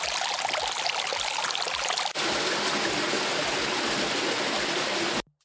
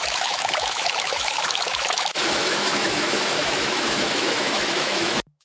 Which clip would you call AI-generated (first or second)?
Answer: second